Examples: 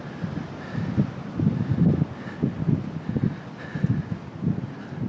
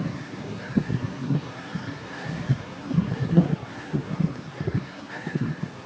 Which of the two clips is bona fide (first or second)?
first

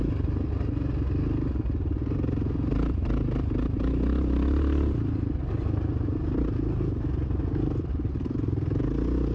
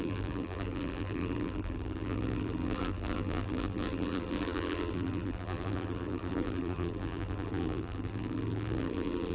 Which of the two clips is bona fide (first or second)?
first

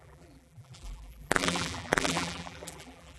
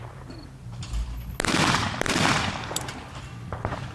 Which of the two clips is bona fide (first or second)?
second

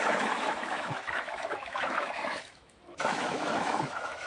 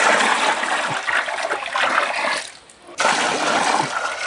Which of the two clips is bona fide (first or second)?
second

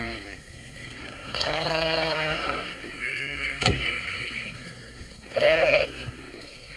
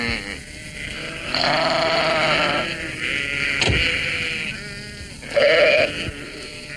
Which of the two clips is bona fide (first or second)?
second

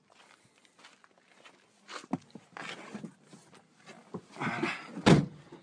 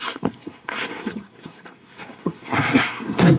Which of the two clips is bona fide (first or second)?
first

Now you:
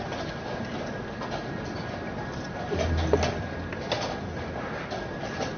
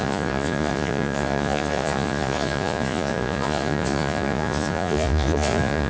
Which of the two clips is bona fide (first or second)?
first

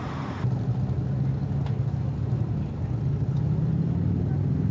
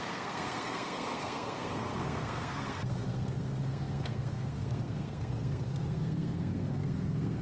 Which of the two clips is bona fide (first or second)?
first